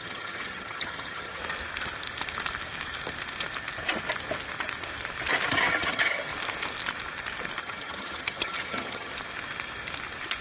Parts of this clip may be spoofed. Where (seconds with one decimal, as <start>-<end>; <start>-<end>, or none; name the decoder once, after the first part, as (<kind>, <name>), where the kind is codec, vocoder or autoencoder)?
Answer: 0.0-1.4 (vocoder, HiFi-GAN); 5.5-6.3; 7.6-9.1